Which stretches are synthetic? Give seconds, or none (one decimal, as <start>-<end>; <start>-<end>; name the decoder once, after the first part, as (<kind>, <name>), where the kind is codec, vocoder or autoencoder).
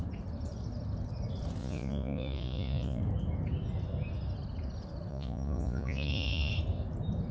1.6-3.0 (vocoder, Vocos); 5.1-6.5